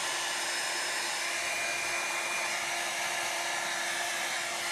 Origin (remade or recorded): recorded